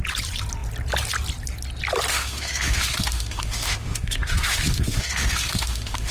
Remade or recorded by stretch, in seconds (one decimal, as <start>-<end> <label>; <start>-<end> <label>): 0.0-2.1 recorded; 2.1-6.1 remade